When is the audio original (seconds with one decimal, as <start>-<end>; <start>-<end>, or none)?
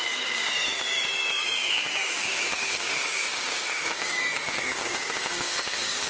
none